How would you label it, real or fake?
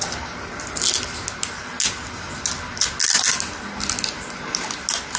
real